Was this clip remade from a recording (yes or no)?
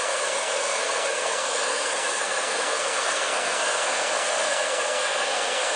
yes